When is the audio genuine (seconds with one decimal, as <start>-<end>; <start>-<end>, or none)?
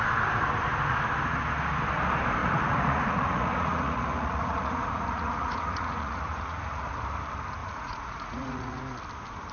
0.0-2.4; 6.9-7.6; 8.8-9.5